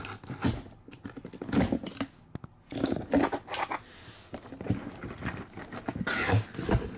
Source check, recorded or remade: recorded